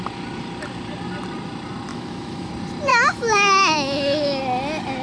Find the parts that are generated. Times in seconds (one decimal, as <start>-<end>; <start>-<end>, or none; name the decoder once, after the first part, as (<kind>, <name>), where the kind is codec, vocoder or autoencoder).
1.9-2.5 (autoencoder, DAC-VAE); 2.9-4.4